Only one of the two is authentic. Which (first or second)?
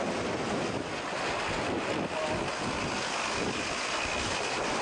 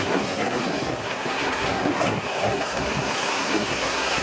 first